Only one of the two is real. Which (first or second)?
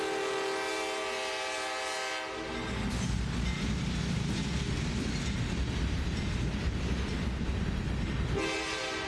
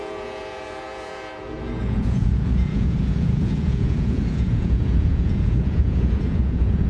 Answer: first